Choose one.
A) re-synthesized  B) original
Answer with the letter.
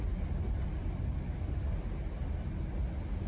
B